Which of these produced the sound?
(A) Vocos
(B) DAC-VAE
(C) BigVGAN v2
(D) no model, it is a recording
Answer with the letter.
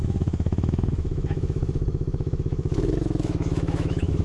B